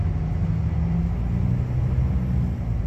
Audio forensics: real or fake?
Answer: real